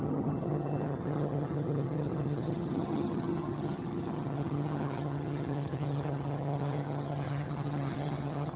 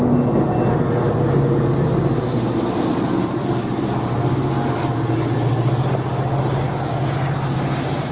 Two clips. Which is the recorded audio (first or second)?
second